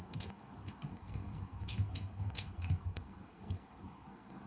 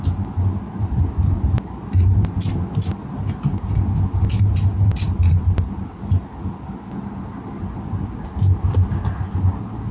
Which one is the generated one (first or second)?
first